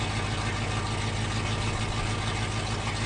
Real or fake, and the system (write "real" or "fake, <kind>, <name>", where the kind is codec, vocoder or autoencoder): real